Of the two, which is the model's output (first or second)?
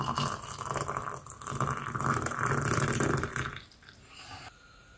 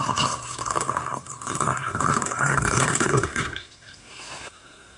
second